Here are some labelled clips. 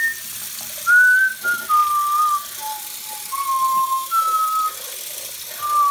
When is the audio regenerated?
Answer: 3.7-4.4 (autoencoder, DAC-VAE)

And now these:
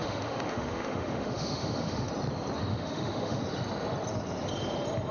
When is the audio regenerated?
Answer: 0.0-2.1 (autoencoder, DAC-VAE); 2.7-3.4

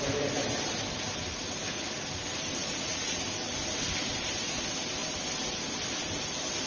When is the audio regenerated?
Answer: 2.6-3.2 (vocoder, Vocos)

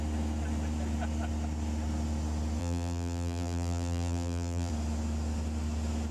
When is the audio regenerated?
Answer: 2.6-4.7 (vocoder, BigVGAN v2)